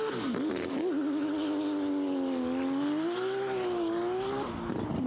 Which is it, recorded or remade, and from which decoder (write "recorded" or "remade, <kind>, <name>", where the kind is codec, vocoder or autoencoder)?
recorded